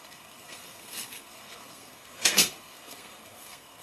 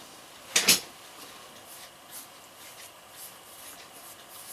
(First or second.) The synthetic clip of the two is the first